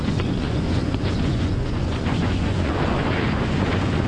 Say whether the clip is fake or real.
fake